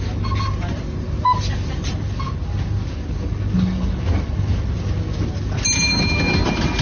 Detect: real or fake real